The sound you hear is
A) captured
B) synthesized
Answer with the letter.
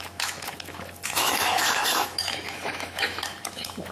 B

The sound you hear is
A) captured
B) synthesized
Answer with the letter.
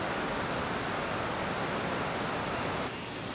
A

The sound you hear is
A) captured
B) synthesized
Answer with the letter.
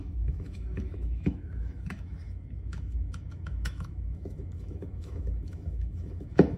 B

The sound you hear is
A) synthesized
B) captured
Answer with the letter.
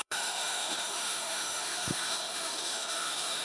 A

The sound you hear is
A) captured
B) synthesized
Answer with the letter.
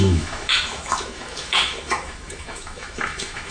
B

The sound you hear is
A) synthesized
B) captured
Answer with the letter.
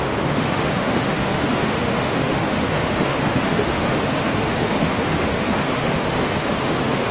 A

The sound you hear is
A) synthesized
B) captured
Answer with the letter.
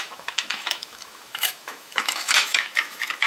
A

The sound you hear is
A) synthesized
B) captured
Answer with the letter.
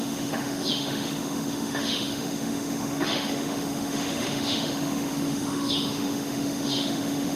A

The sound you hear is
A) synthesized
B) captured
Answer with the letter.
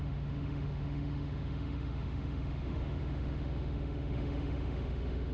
A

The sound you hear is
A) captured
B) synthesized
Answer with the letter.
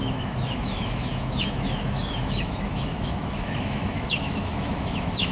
B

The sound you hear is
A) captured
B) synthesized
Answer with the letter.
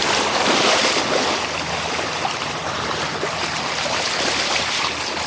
A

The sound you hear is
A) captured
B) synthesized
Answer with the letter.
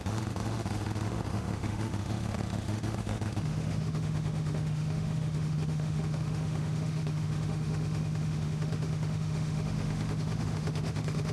B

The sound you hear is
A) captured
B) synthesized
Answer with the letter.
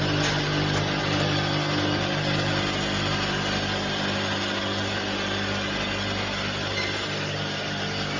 A